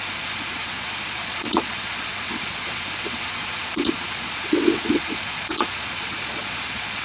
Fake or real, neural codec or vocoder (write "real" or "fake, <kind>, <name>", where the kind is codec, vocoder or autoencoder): fake, vocoder, Vocos